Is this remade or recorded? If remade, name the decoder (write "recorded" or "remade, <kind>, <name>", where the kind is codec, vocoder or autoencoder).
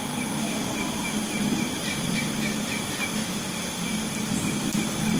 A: remade, vocoder, BigVGAN v2